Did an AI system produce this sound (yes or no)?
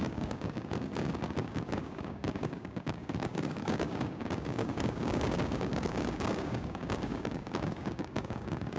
yes